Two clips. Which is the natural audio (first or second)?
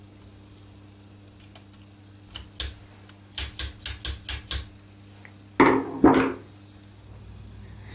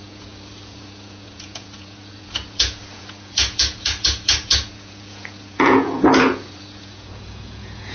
first